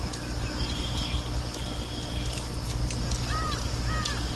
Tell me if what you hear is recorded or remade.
recorded